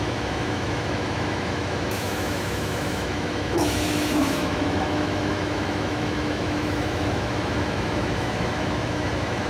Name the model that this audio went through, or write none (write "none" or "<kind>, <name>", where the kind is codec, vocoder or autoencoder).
autoencoder, DAC-VAE